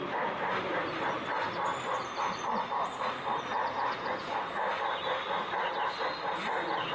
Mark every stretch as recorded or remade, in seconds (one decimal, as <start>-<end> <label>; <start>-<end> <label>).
0.0-6.9 recorded